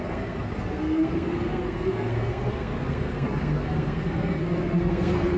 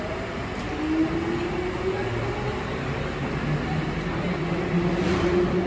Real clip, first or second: second